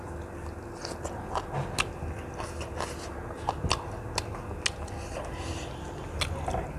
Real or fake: real